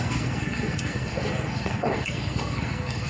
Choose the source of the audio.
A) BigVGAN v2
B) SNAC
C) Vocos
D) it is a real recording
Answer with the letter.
B